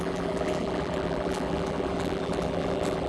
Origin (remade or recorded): remade